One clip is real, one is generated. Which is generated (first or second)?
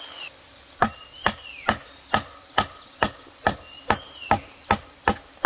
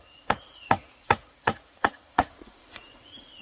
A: second